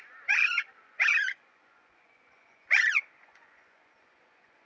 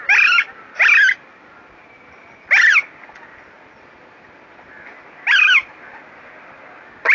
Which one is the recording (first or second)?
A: second